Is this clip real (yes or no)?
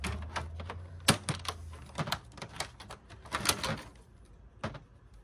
yes